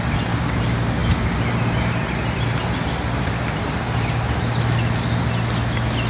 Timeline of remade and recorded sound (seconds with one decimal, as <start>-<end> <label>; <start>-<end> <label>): 0.0-6.1 recorded